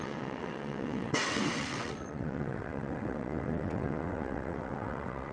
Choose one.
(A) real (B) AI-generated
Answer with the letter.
B